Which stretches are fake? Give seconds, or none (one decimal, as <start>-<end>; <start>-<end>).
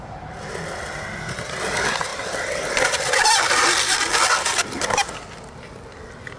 none